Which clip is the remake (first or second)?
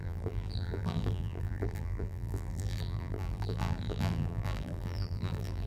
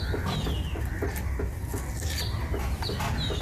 first